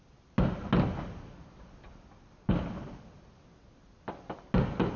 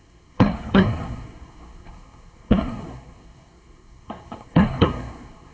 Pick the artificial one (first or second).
second